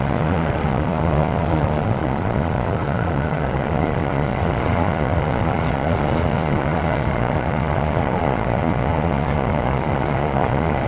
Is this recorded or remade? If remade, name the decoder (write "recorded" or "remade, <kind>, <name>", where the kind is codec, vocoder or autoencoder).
remade, vocoder, Vocos